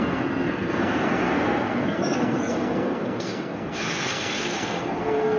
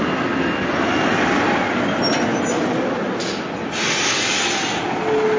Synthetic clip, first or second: first